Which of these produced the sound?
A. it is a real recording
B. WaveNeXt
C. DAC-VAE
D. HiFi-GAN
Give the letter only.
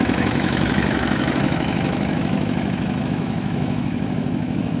C